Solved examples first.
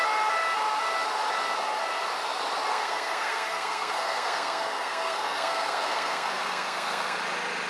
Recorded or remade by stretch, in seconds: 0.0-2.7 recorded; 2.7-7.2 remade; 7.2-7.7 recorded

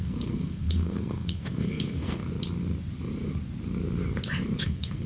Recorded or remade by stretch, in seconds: 0.0-2.2 remade; 2.2-4.6 recorded; 4.6-5.1 remade

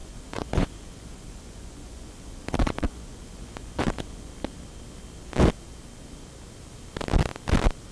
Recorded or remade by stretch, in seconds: 0.0-4.3 remade; 4.3-7.9 recorded

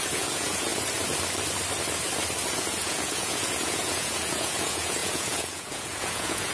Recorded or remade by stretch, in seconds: 0.0-0.7 remade; 0.7-2.5 recorded; 2.5-6.5 remade

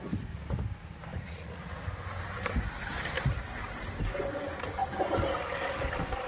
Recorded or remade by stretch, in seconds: 0.0-1.1 recorded; 1.1-1.7 remade; 1.7-6.3 recorded